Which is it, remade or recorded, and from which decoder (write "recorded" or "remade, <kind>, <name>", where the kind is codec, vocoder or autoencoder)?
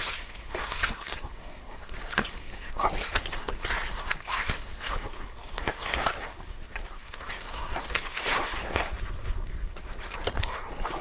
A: remade, codec, SNAC